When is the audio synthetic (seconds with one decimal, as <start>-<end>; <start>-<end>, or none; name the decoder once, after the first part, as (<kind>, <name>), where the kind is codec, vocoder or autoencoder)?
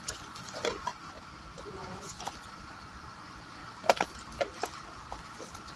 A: 0.0-0.9 (vocoder, Vocos); 1.6-3.6